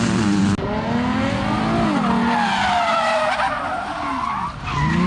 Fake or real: real